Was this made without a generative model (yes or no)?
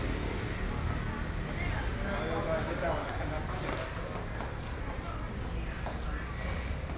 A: yes